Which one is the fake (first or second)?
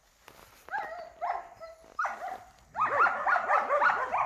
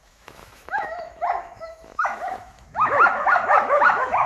second